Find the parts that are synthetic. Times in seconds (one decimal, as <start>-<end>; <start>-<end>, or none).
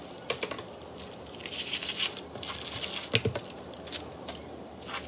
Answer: 0.0-1.8